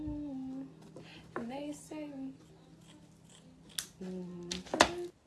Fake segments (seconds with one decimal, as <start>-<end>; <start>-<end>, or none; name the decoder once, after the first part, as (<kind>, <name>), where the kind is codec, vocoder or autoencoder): none